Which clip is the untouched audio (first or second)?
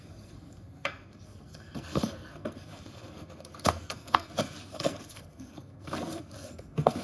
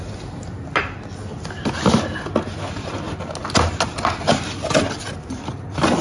second